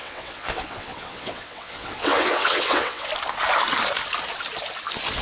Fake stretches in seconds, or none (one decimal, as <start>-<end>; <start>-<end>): 0.0-3.1